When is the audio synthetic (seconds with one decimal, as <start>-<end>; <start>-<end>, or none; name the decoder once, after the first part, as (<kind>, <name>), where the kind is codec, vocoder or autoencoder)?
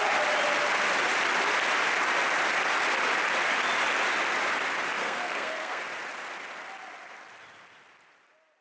5.0-5.8 (codec, SNAC)